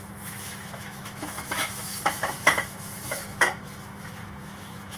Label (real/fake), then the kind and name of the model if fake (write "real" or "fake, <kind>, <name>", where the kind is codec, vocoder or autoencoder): fake, autoencoder, DAC-VAE